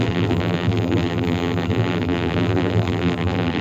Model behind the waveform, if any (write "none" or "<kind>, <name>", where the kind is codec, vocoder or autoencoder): vocoder, BigVGAN v2